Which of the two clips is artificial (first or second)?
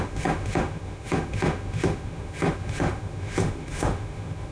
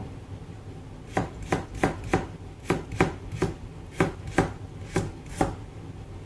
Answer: first